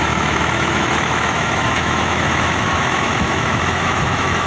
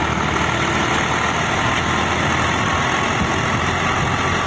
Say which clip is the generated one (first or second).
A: first